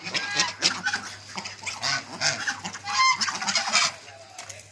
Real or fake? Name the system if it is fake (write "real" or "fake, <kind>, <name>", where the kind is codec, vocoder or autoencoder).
real